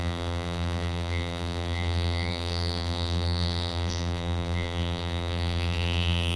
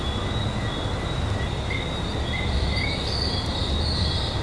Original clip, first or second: second